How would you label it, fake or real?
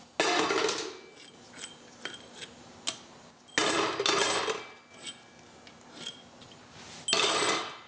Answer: real